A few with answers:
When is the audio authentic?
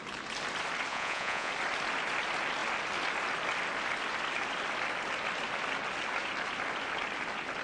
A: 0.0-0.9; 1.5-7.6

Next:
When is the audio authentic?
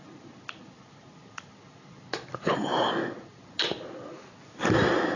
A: 0.0-5.2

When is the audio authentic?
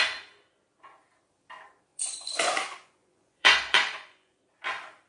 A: 0.0-1.9; 4.4-5.1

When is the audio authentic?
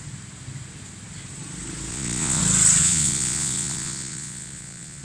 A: 0.0-1.9; 2.4-2.8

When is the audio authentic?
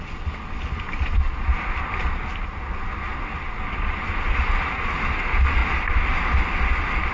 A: 0.0-7.1